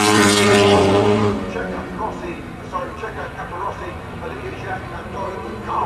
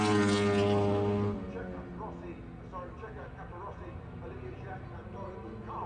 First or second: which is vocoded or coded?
first